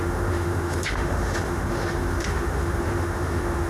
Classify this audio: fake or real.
fake